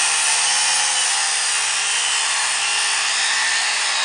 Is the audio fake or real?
real